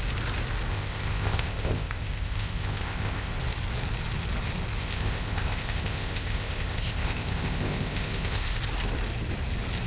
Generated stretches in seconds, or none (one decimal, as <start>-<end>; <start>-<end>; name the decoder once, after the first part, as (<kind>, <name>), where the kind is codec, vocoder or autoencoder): 0.7-3.3 (codec, ZipCodec); 4.8-8.6